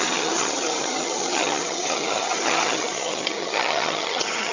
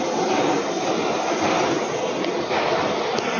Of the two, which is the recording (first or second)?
second